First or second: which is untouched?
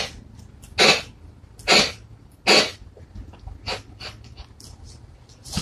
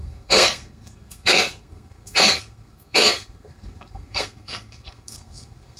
first